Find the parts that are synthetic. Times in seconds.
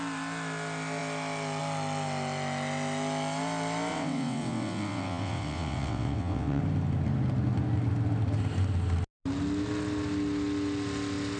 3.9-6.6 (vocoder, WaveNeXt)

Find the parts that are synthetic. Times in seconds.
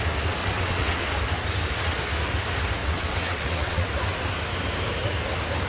0.4-1.0 (vocoder, WaveNeXt); 2.8-3.9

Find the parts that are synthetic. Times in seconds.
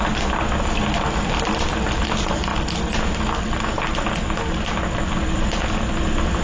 none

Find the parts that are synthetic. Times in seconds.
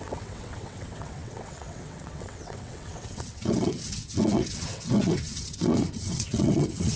0.0-7.0 (vocoder, WaveNeXt)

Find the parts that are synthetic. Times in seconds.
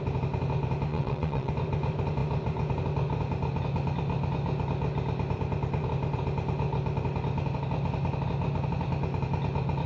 0.9-1.5 (vocoder, WaveNeXt)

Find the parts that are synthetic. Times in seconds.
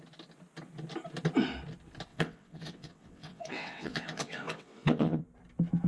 2.1-5.2 (vocoder, WaveNeXt)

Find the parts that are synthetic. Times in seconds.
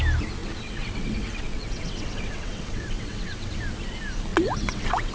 0.4-3.5 (vocoder, WaveNeXt); 4.3-5.1